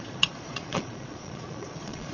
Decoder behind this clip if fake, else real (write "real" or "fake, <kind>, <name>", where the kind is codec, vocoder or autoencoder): fake, vocoder, Vocos